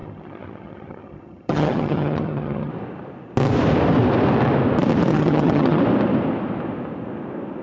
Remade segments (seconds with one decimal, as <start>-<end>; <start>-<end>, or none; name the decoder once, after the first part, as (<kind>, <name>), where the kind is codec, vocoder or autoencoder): 0.0-2.7 (vocoder, HiFi-GAN); 5.1-5.8